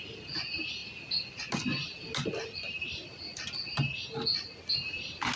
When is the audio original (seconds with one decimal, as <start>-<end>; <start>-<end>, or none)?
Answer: 0.0-5.4